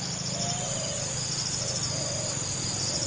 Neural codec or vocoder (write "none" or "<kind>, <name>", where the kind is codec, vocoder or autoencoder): none